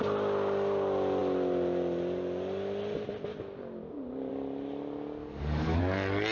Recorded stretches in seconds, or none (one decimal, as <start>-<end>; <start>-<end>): 0.0-5.2; 5.8-6.3